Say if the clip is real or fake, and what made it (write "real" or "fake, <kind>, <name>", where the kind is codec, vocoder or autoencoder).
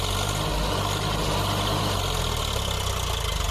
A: real